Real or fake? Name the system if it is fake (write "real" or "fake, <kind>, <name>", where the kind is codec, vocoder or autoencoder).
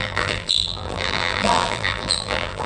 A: fake, vocoder, BigVGAN v2